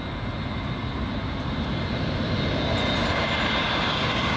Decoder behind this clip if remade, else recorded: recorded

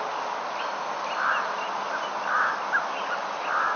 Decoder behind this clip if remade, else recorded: recorded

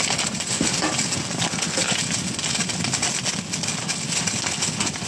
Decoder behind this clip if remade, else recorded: recorded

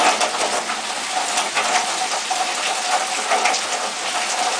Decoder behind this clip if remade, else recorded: recorded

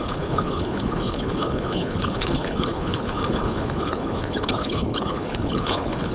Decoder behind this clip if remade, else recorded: remade, codec, HILCodec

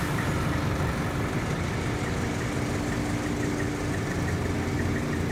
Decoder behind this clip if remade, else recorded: recorded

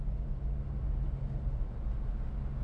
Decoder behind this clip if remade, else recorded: recorded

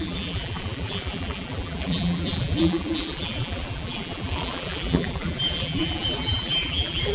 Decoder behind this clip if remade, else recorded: remade, vocoder, BigVGAN v2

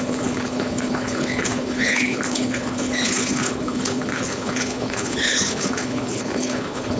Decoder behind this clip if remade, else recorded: remade, codec, HILCodec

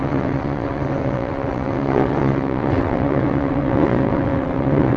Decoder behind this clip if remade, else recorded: remade, vocoder, WaveNeXt